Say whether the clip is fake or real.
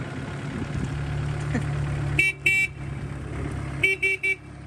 real